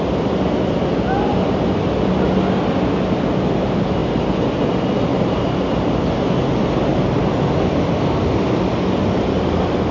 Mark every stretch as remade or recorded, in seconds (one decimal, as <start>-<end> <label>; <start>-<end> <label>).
0.0-9.9 recorded